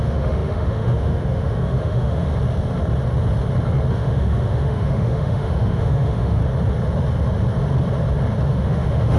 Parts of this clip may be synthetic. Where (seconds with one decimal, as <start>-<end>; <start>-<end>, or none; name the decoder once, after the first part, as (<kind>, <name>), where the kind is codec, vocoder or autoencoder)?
0.0-2.3 (autoencoder, DAC-VAE); 3.9-6.4; 8.5-9.2